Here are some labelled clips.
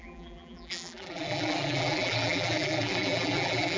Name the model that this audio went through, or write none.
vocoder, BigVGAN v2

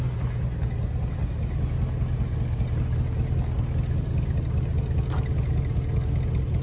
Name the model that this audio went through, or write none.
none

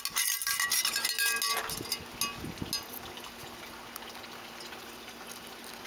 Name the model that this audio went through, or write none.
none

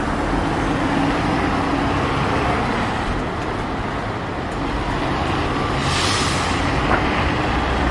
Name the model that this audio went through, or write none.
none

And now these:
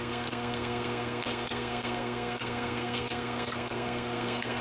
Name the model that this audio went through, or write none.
codec, SNAC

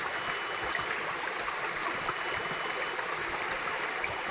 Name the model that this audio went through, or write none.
none